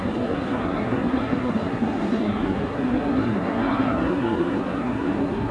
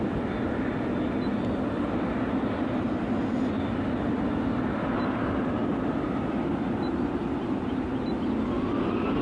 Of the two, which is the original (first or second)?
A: second